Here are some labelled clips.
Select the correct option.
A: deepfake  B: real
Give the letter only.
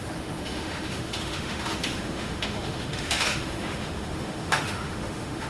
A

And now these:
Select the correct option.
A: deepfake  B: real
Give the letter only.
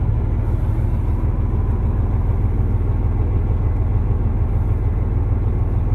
B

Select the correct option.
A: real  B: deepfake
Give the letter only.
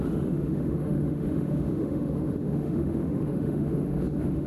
B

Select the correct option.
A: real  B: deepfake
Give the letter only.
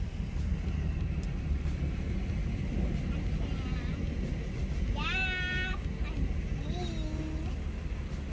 A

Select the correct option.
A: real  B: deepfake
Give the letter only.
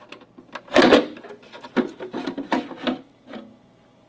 A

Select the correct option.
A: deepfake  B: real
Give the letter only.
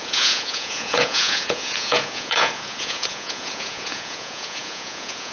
A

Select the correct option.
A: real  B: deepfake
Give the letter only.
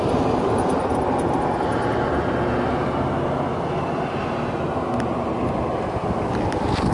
A